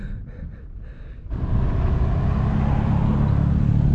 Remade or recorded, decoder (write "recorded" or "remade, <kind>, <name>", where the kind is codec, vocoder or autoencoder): recorded